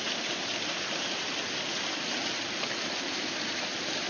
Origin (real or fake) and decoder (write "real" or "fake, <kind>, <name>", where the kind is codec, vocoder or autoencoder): real